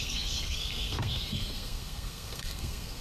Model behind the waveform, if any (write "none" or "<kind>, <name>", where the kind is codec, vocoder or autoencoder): codec, SNAC